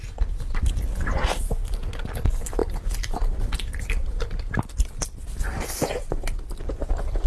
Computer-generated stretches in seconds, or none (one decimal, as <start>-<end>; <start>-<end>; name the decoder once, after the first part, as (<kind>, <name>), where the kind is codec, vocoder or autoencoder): none